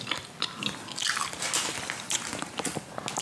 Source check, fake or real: real